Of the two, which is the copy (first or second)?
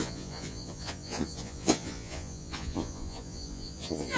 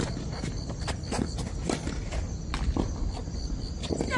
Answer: first